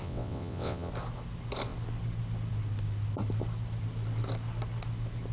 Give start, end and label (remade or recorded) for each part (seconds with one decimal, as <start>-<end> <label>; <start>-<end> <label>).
0.0-0.9 remade; 0.9-5.3 recorded